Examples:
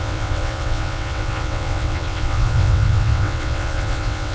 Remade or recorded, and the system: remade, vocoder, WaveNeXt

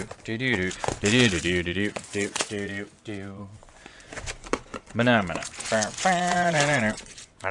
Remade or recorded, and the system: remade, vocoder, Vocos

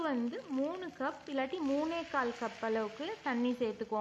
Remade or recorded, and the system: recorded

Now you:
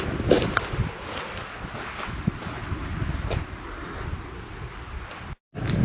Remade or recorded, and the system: recorded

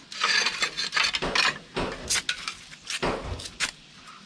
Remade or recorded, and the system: recorded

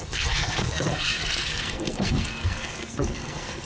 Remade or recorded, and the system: remade, codec, SNAC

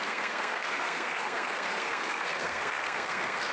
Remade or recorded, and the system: remade, codec, SNAC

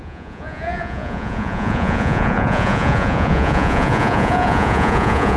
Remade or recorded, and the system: remade, vocoder, Vocos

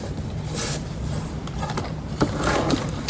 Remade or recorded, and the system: recorded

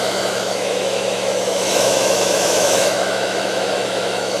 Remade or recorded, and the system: remade, autoencoder, DAC-VAE